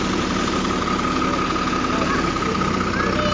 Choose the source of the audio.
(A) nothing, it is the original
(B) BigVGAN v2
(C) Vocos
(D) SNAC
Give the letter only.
A